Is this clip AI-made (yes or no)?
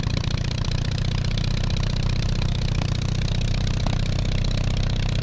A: yes